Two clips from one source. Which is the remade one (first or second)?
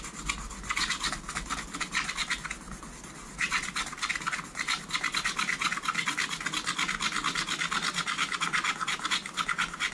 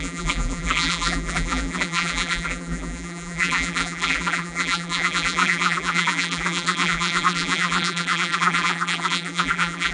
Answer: second